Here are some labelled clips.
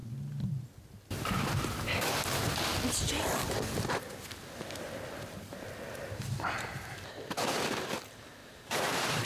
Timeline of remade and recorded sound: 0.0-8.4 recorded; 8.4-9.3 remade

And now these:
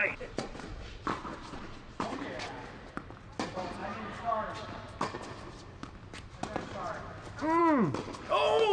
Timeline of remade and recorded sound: 0.0-2.1 remade; 2.1-8.7 recorded

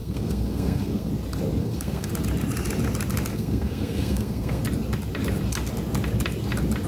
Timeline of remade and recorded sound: 0.0-1.1 remade; 1.1-1.6 recorded; 1.6-2.1 remade; 2.1-3.3 recorded; 3.3-4.6 remade; 4.6-6.9 recorded

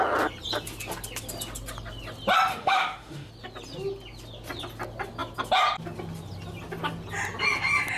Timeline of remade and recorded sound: 0.0-2.5 recorded; 2.5-3.3 remade; 3.3-8.0 recorded

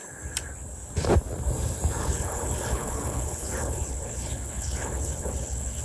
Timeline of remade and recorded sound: 0.0-2.0 recorded; 2.0-5.8 remade

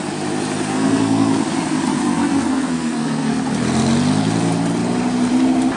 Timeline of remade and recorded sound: 0.0-0.7 recorded; 0.7-1.4 remade; 1.4-2.0 recorded; 2.0-3.4 remade; 3.4-5.8 recorded

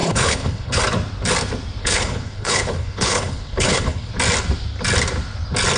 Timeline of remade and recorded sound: 0.0-0.8 remade; 0.8-1.8 recorded; 1.8-4.1 remade; 4.1-5.8 recorded

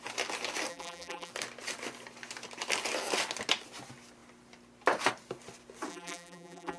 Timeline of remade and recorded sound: 0.0-0.7 recorded; 0.7-1.3 remade; 1.3-5.9 recorded; 5.9-6.8 remade